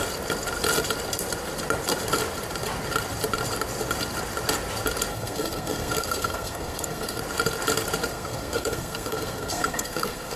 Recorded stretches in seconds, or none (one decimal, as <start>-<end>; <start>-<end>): 0.0-5.1; 7.2-8.1